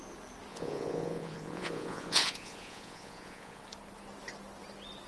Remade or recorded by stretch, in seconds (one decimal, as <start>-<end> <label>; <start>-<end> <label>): 0.0-0.5 recorded; 0.5-3.6 remade; 3.6-5.1 recorded